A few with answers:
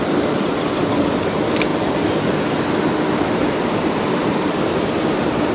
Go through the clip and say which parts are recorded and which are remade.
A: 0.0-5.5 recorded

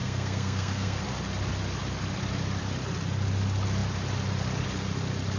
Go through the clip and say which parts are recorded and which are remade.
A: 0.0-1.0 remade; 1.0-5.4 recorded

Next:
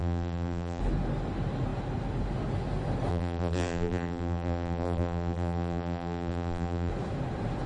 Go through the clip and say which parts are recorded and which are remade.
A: 0.0-0.8 remade; 0.8-3.1 recorded; 3.1-6.9 remade; 6.9-7.7 recorded

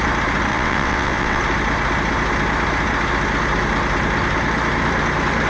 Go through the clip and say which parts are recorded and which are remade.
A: 0.0-0.5 recorded; 0.5-1.4 remade; 1.4-5.5 recorded

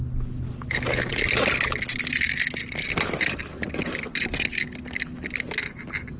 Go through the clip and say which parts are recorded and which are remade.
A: 0.0-6.2 recorded

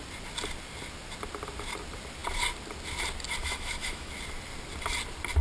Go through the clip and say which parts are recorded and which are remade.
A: 0.0-3.4 recorded; 3.4-4.1 remade; 4.1-5.4 recorded

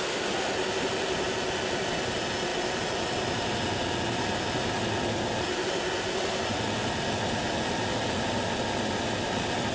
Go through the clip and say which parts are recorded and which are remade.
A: 0.0-9.7 recorded